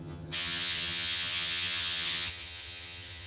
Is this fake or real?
fake